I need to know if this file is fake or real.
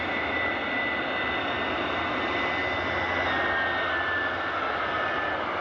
real